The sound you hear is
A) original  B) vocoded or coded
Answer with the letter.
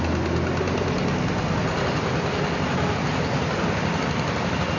A